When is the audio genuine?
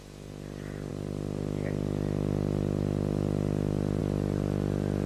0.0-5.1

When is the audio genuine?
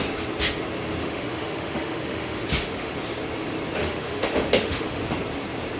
0.0-1.0; 2.9-3.8; 5.0-5.8